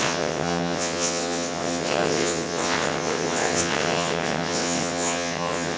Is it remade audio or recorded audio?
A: remade